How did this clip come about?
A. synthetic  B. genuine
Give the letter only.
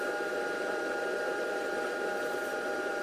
A